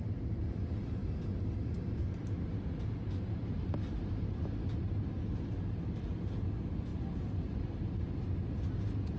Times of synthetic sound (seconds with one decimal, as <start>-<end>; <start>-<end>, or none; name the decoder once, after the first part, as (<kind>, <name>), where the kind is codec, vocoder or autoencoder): none